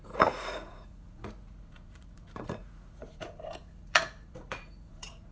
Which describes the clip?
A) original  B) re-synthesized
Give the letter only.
B